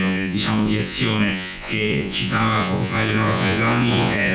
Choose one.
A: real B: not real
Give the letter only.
B